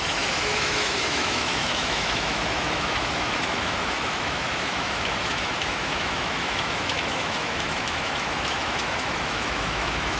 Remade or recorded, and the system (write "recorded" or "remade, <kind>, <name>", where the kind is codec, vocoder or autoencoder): remade, autoencoder, DAC-VAE